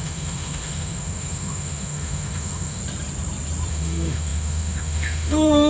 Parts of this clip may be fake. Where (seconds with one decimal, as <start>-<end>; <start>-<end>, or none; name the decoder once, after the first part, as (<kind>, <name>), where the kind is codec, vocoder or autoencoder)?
0.0-2.8 (autoencoder, DAC-VAE); 3.7-5.7